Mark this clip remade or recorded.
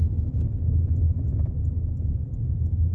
recorded